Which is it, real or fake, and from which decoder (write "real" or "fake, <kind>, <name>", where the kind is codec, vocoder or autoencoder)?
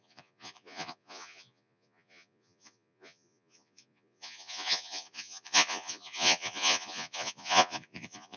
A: fake, vocoder, Vocos